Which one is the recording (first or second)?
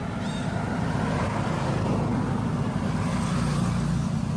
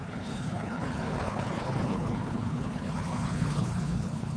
first